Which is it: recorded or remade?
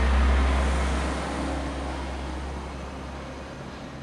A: recorded